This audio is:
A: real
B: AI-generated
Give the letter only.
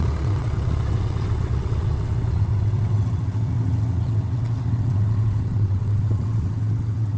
B